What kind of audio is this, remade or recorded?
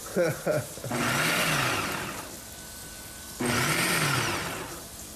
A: recorded